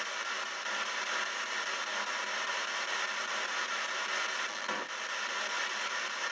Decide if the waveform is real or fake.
real